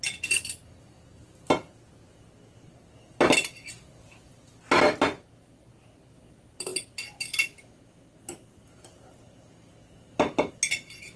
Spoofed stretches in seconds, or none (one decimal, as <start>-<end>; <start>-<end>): none